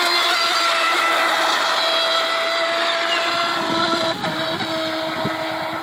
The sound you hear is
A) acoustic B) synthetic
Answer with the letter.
A